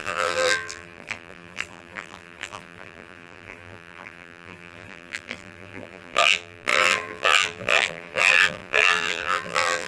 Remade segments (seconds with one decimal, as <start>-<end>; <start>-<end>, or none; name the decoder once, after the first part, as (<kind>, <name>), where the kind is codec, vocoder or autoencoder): 0.0-9.9 (vocoder, BigVGAN v2)